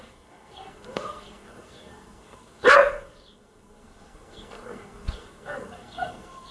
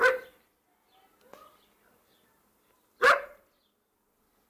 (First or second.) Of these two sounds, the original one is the second